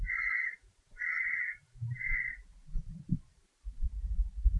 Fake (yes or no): yes